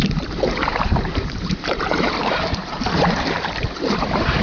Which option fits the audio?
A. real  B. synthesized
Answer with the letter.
B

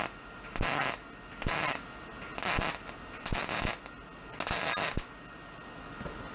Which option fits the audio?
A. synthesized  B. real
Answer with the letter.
B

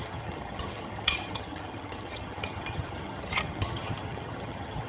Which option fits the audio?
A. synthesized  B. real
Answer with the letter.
A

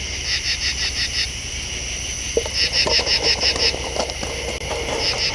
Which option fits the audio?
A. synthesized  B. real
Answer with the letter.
B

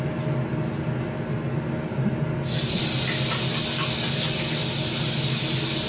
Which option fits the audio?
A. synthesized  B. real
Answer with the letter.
B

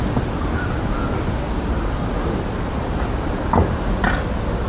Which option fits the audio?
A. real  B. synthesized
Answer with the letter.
A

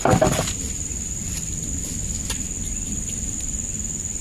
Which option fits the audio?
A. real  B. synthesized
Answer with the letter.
A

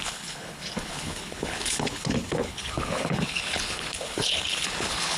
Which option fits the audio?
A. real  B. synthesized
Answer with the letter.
B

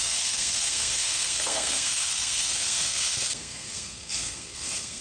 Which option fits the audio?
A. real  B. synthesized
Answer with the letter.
B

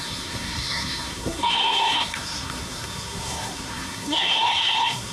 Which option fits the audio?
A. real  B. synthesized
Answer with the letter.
B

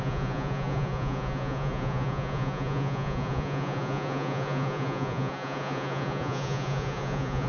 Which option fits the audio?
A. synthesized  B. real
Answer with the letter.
A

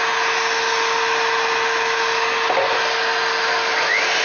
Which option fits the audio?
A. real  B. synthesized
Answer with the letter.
A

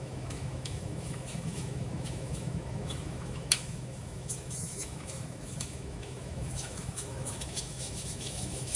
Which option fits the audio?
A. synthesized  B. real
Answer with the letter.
A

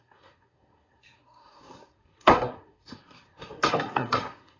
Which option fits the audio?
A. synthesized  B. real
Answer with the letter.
A